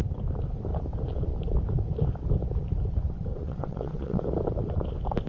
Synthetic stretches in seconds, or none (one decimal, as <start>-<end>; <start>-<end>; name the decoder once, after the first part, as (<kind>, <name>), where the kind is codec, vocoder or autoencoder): 3.3-4.2 (vocoder, WaveNeXt)